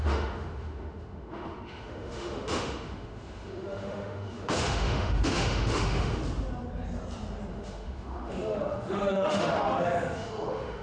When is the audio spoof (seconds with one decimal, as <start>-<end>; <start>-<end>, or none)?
0.0-6.2; 7.5-10.8